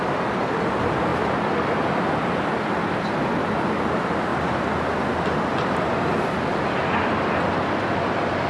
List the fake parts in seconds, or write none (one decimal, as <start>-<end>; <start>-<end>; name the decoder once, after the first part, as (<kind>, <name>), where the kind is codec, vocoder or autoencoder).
none